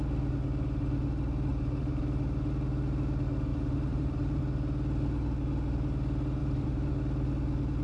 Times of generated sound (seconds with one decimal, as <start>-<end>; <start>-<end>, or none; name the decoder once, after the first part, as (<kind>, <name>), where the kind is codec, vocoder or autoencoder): 1.5-2.0 (vocoder, BigVGAN v2); 3.5-4.4; 6.4-6.9